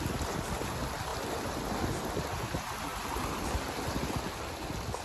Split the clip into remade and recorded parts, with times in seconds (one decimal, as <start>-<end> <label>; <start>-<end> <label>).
0.0-5.0 recorded

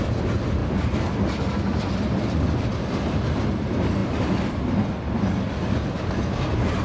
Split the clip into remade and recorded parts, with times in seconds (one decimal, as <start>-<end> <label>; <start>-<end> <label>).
0.0-6.8 recorded

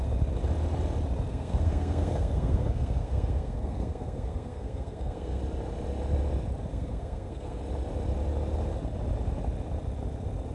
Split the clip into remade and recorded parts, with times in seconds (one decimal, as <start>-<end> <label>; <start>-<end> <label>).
0.0-1.3 recorded; 1.3-5.4 remade; 5.4-6.7 recorded; 6.7-7.6 remade; 7.6-10.5 recorded

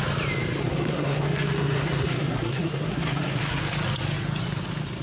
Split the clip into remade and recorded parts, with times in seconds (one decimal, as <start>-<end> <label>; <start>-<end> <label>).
0.0-0.6 recorded; 0.6-3.6 remade; 3.6-5.0 recorded

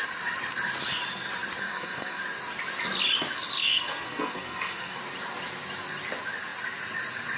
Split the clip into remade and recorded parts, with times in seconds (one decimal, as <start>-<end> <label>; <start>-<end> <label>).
0.0-1.6 recorded; 1.6-2.2 remade; 2.2-3.6 recorded; 3.6-5.0 remade; 5.0-7.4 recorded

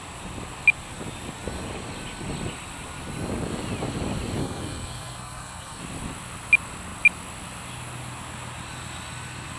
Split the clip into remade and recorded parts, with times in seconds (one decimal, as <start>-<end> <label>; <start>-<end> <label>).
0.0-4.4 recorded; 4.4-5.8 remade; 5.8-9.6 recorded

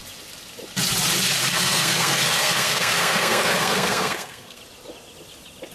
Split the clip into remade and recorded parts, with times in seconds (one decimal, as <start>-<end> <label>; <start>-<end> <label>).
0.0-1.5 recorded; 1.5-4.6 remade; 4.6-5.7 recorded